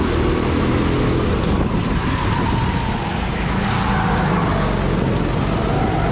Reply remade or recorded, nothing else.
recorded